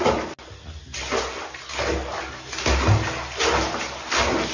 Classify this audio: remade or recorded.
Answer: recorded